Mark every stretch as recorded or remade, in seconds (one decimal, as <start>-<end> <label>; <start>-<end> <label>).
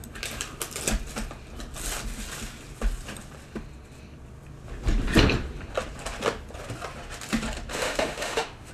0.0-7.7 recorded; 7.7-8.7 remade